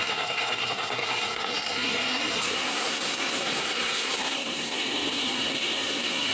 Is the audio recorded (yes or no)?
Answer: no